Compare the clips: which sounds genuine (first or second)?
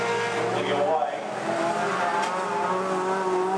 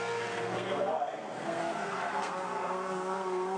first